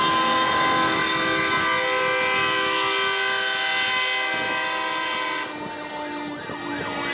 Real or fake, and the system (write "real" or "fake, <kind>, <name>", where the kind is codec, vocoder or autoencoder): real